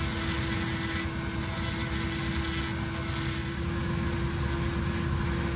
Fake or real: real